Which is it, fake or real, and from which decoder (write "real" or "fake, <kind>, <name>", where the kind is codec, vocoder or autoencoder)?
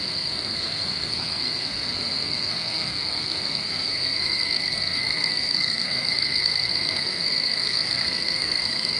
fake, codec, SNAC